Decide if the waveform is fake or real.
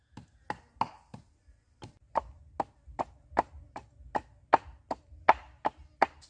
real